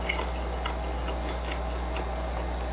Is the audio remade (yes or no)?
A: no